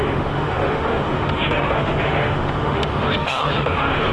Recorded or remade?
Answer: remade